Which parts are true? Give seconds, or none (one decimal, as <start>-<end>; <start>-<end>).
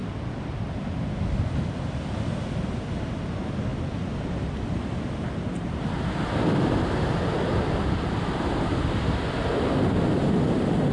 0.0-10.9